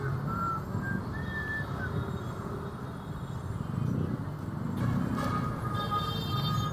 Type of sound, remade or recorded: recorded